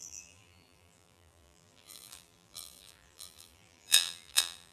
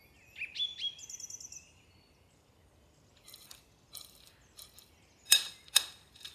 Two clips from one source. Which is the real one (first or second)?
second